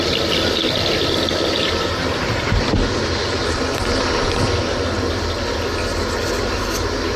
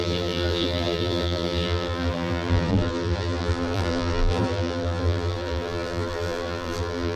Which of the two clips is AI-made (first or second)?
second